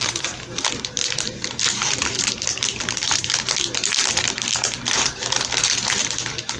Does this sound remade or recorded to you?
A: remade